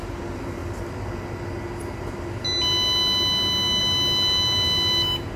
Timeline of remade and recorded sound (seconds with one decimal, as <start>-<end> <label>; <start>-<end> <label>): 0.0-5.4 recorded